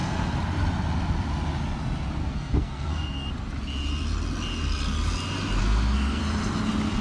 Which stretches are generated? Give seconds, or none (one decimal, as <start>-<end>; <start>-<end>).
2.2-3.3; 5.6-6.2